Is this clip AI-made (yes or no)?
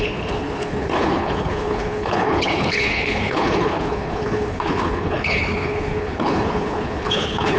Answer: yes